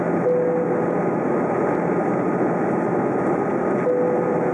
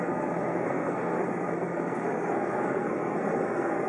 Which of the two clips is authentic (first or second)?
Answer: first